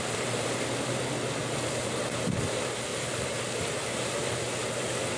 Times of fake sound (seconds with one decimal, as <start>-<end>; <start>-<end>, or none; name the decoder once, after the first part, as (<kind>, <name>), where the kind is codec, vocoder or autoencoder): 0.0-5.2 (vocoder, BigVGAN v2)